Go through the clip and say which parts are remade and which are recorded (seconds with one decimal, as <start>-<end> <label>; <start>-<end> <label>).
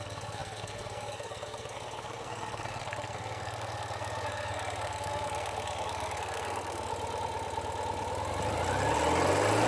0.0-6.9 remade; 6.9-9.7 recorded